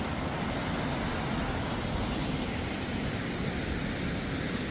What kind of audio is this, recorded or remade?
recorded